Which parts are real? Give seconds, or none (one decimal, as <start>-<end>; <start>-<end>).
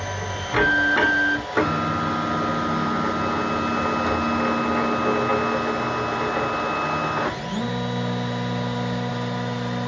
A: 0.0-9.9